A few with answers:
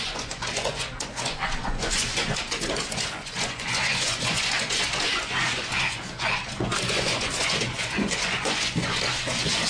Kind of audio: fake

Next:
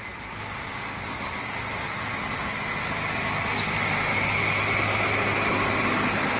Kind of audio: real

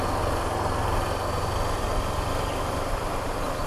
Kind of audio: real